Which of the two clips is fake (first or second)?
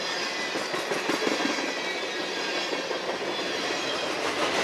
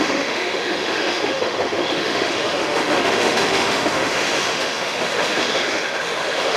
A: second